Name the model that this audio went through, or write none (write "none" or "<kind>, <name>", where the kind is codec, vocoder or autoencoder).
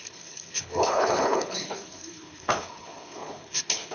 codec, HILCodec